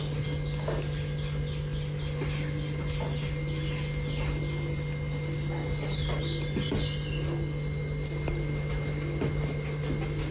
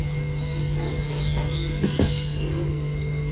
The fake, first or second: second